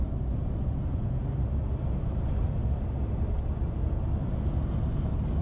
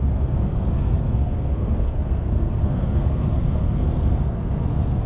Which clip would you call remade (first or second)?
second